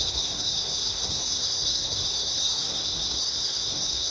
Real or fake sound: fake